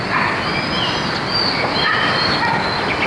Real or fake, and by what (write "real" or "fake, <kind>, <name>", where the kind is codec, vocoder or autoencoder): real